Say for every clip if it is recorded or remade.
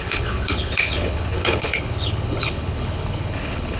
remade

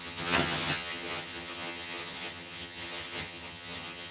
remade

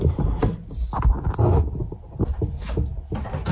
recorded